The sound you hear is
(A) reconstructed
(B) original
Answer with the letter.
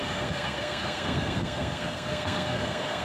A